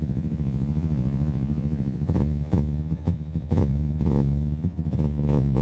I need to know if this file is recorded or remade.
remade